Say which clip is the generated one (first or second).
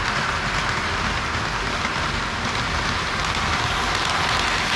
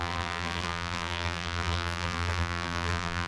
second